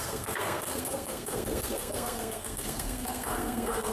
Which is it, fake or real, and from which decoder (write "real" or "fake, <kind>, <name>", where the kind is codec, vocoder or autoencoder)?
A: fake, codec, SNAC